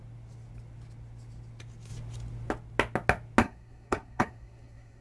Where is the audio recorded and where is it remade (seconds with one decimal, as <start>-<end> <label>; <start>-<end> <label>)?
0.0-3.4 recorded; 3.4-5.0 remade